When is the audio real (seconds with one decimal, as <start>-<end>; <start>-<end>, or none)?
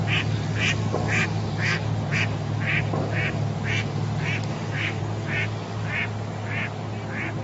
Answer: 0.0-4.5; 5.0-7.4